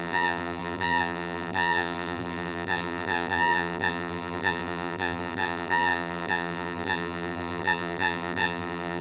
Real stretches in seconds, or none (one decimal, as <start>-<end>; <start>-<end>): none